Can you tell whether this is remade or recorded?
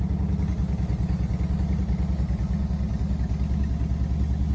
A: recorded